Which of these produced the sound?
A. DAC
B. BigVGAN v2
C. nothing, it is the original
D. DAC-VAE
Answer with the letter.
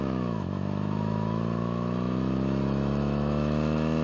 D